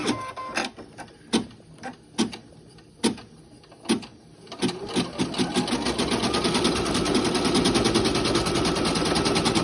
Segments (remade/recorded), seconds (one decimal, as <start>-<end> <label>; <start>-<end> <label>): 0.0-9.6 recorded